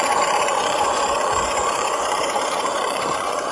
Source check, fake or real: fake